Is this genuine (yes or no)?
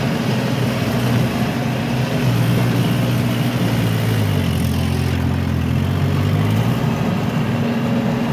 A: yes